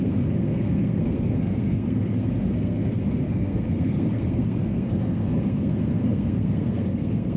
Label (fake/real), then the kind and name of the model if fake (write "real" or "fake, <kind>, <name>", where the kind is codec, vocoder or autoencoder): fake, codec, SNAC